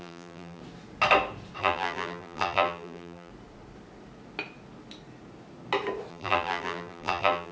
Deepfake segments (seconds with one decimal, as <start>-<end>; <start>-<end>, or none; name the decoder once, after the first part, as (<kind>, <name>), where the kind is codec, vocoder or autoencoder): 0.0-0.6 (vocoder, BigVGAN v2); 1.6-3.3; 6.1-7.5